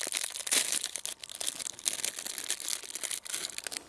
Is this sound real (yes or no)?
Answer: yes